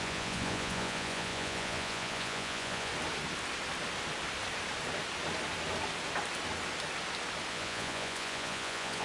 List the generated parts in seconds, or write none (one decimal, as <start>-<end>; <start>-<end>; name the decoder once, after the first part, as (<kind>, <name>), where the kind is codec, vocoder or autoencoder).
0.0-2.9 (vocoder, Vocos); 7.5-9.0